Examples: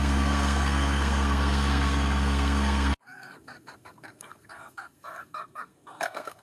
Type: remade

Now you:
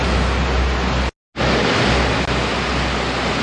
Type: recorded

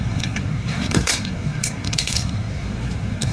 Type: remade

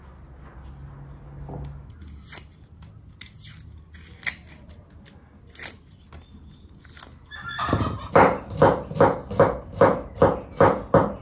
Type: recorded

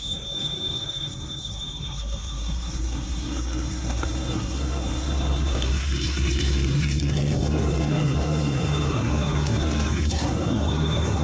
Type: remade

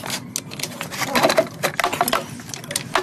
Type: recorded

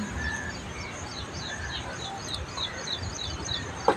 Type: recorded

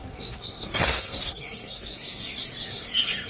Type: remade